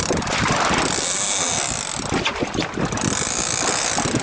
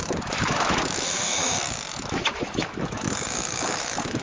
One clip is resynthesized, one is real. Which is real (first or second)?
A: first